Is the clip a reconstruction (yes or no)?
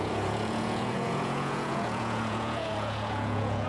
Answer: yes